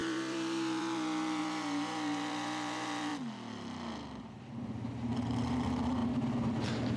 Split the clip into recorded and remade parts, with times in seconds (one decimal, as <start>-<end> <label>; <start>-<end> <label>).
0.0-3.1 remade; 3.1-4.2 recorded; 4.2-7.0 remade